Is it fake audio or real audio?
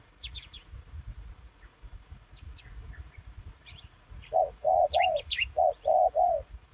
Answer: fake